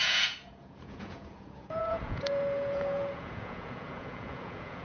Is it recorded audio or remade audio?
remade